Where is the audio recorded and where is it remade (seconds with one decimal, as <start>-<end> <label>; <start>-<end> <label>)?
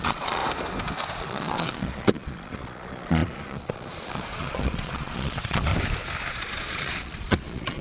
0.0-0.4 remade; 0.4-1.1 recorded; 1.1-5.7 remade; 5.7-6.3 recorded; 6.3-7.8 remade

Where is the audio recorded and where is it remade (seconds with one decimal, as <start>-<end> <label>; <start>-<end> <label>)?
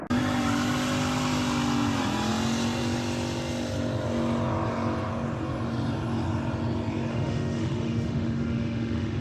0.0-7.1 recorded; 7.1-9.2 remade